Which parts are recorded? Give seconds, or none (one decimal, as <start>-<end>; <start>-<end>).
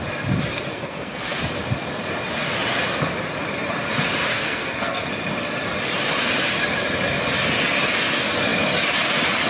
0.0-0.7; 1.4-4.3; 5.1-9.5